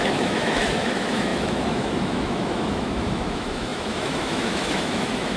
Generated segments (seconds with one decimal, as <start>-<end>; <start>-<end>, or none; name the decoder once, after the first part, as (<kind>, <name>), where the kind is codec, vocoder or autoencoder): 0.0-5.4 (autoencoder, DAC-VAE)